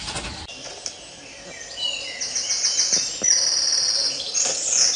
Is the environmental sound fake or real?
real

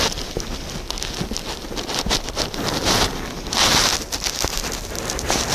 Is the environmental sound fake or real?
real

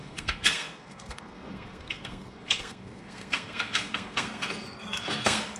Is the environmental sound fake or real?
fake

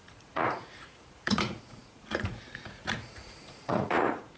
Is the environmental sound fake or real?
fake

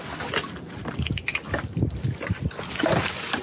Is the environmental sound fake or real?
real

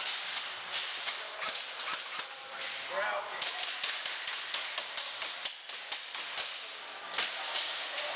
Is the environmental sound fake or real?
real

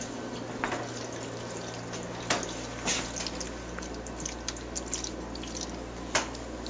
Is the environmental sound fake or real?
real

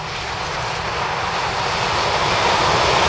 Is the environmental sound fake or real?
real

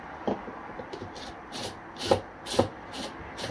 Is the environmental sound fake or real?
real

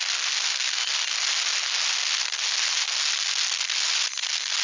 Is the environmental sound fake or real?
real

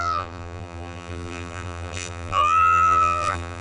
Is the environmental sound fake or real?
fake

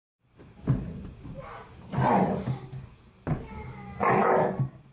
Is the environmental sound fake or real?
real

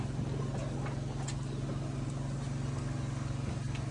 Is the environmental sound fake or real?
real